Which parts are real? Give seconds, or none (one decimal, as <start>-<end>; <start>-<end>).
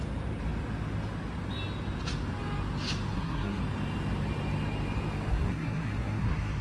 0.0-3.1; 3.6-5.3